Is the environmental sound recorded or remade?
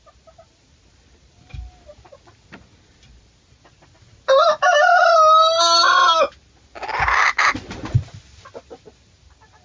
recorded